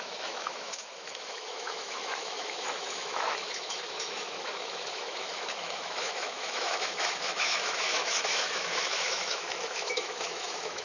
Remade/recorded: remade